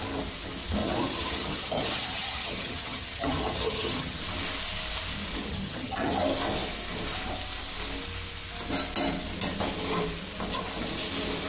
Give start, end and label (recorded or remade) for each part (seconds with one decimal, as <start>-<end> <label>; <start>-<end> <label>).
0.0-0.8 recorded; 0.8-4.2 remade; 4.2-5.4 recorded; 5.4-6.1 remade; 6.1-11.5 recorded